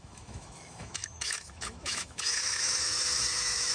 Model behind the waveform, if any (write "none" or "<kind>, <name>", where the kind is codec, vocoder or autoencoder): autoencoder, DAC-VAE